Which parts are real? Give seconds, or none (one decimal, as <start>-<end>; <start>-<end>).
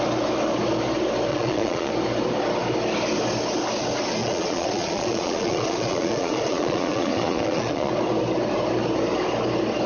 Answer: 0.0-1.3; 1.9-4.2; 7.9-9.9